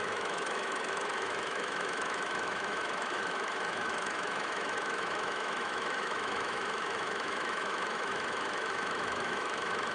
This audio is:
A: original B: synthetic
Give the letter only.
B